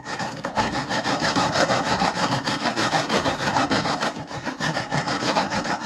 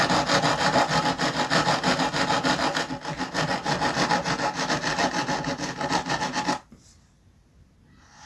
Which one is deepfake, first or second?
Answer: first